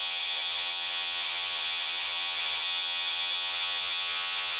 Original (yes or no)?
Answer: no